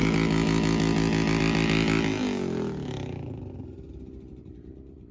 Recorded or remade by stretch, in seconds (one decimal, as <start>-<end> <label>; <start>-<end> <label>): 0.0-5.1 recorded